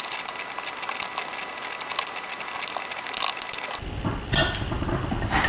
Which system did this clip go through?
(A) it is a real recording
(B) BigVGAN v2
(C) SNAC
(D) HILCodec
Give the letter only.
A